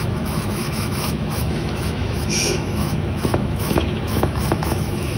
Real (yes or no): no